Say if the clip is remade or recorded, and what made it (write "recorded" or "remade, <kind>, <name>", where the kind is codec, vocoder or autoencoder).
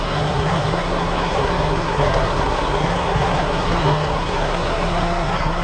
remade, codec, SNAC